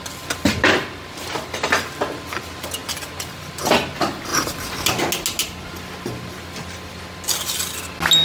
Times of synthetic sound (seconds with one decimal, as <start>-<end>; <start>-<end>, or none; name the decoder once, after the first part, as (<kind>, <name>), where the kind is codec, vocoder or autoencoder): none